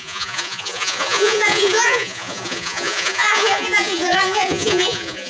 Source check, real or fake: fake